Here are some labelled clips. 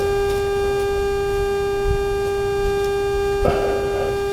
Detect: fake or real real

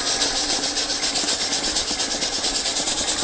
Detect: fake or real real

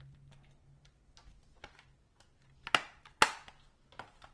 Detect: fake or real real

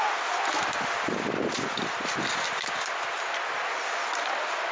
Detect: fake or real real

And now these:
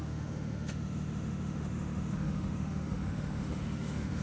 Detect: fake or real fake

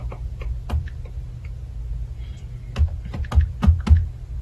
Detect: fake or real real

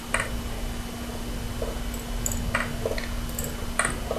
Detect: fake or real real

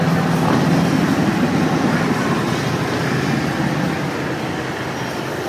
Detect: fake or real real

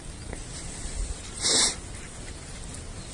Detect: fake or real real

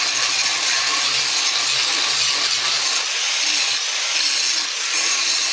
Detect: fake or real real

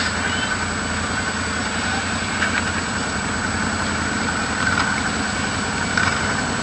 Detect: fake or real real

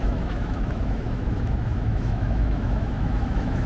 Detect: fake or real fake